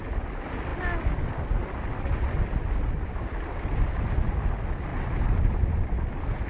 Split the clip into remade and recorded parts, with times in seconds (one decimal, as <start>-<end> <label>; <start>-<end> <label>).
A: 0.0-6.5 recorded

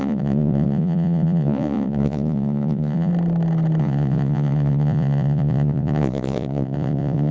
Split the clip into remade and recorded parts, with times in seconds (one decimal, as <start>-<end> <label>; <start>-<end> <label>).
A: 0.0-3.1 remade; 3.1-3.8 recorded; 3.8-7.3 remade

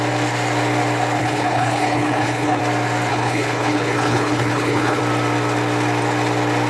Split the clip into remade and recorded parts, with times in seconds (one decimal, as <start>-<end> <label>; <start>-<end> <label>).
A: 0.0-1.2 recorded; 1.2-2.6 remade; 2.6-3.1 recorded; 3.1-5.0 remade; 5.0-6.7 recorded

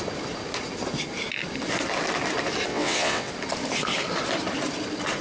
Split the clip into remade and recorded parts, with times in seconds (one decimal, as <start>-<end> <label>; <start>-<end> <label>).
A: 0.0-2.7 recorded; 2.7-3.3 remade; 3.3-5.2 recorded

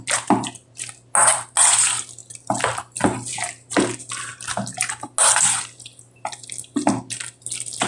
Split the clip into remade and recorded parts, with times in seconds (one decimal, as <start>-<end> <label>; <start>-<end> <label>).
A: 0.0-7.9 recorded

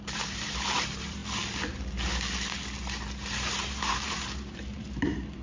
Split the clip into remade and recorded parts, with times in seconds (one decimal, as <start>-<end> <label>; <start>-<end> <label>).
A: 0.0-1.2 remade; 1.2-2.8 recorded; 2.8-5.4 remade

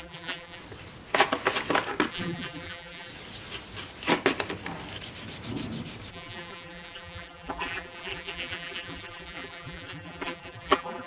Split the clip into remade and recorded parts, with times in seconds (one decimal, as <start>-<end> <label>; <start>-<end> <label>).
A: 0.0-0.6 remade; 0.6-2.1 recorded; 2.1-3.1 remade; 3.1-6.1 recorded; 6.1-11.1 remade

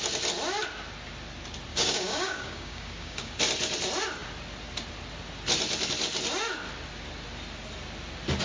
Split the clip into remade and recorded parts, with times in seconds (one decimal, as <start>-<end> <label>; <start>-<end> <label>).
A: 0.0-1.7 recorded; 1.7-3.4 remade; 3.4-8.4 recorded